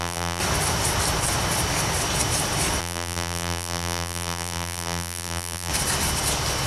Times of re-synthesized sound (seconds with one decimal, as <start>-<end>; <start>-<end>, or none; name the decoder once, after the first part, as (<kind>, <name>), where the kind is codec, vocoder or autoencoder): 0.0-0.4 (vocoder, BigVGAN v2); 2.8-5.7